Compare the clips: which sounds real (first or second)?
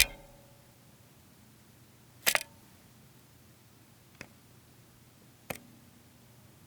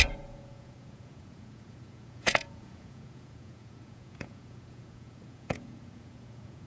first